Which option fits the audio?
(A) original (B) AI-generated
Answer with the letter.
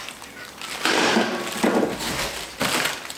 A